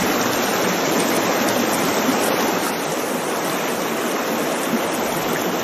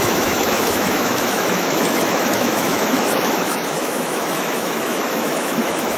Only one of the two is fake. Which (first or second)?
second